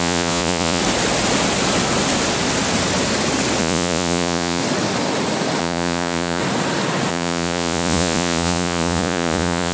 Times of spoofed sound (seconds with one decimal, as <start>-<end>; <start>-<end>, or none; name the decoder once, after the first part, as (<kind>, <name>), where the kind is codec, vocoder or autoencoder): 0.0-0.8 (vocoder, Vocos); 3.6-4.6; 5.6-6.4; 7.1-9.7